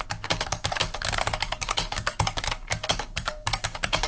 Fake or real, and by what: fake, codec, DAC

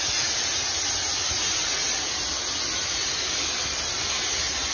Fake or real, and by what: real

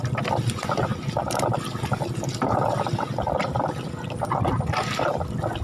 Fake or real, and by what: real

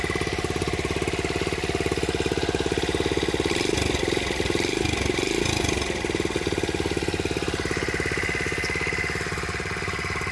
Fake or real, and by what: real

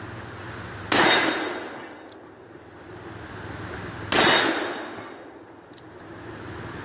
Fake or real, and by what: real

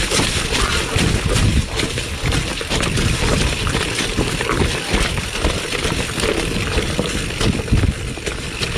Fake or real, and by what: real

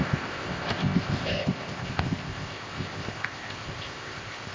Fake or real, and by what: fake, codec, ZipCodec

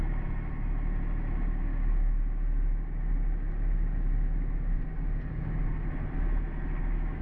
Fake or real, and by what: real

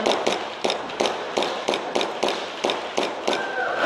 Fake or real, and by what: real